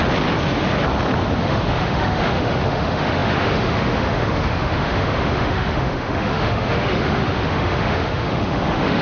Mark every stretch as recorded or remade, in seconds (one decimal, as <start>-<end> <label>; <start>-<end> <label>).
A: 0.0-1.4 recorded; 1.4-9.0 remade